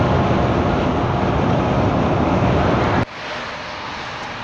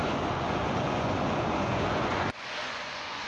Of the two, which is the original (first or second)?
first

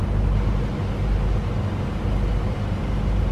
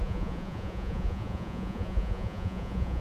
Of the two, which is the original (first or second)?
first